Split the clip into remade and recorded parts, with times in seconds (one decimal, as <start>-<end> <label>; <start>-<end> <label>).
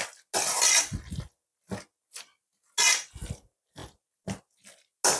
0.0-5.2 recorded